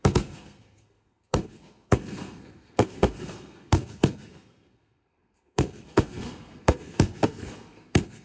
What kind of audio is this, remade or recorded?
remade